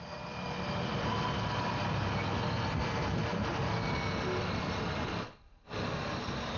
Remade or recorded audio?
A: recorded